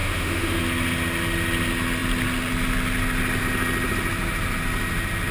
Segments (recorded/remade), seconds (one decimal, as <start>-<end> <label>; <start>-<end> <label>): 0.0-0.6 remade; 0.6-5.3 recorded